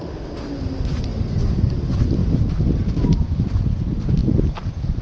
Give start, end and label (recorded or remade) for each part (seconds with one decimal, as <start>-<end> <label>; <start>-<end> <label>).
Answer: 0.0-5.0 recorded